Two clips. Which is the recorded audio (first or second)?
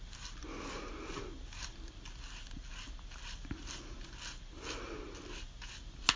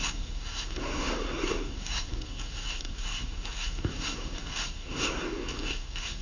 first